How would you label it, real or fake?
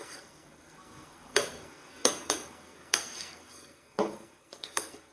fake